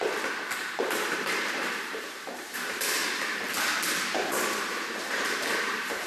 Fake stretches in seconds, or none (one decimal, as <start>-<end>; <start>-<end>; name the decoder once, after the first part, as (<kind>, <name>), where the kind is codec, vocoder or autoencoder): 0.6-3.0 (vocoder, BigVGAN v2); 3.9-6.1